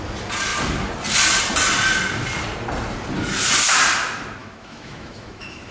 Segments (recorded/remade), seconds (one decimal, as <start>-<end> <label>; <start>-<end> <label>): 0.0-4.4 recorded; 4.4-5.7 remade